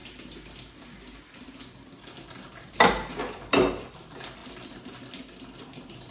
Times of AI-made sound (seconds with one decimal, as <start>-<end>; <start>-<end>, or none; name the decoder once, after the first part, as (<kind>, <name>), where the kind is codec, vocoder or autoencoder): none

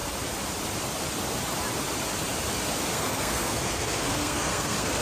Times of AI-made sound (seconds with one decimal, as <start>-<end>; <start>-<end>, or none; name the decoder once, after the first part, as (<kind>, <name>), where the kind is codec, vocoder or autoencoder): 2.9-5.0 (codec, SNAC)